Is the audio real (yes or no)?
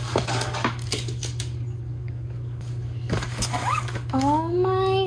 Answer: no